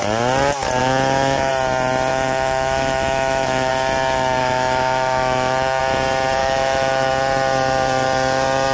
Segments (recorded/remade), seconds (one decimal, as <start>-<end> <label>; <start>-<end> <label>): 0.0-0.8 recorded; 0.8-1.5 remade; 1.5-2.1 recorded; 2.1-3.7 remade; 3.7-4.4 recorded; 4.4-5.8 remade; 5.8-6.4 recorded; 6.4-7.1 remade; 7.1-8.7 recorded

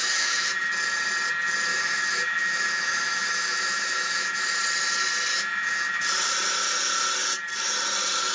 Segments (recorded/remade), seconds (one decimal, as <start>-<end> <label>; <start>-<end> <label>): 0.0-0.7 remade; 0.7-1.7 recorded; 1.7-4.6 remade; 4.6-5.3 recorded; 5.3-6.0 remade; 6.0-8.3 recorded

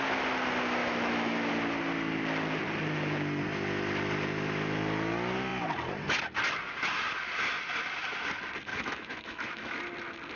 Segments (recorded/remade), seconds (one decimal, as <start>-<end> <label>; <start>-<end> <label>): 0.0-0.8 recorded; 0.8-1.5 remade; 1.5-8.7 recorded; 8.7-9.8 remade; 9.8-10.4 recorded

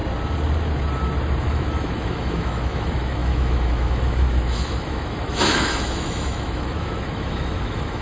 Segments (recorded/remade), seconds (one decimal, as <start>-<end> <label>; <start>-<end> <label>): 0.0-1.4 recorded; 1.4-8.0 remade